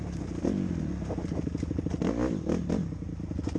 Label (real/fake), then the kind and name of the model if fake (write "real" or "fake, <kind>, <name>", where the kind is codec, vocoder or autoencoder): real